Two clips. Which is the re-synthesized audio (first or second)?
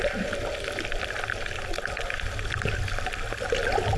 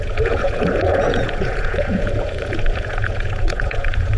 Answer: second